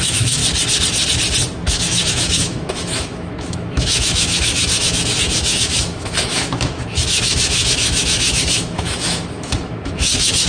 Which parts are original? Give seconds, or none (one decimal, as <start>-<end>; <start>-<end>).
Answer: 0.4-1.7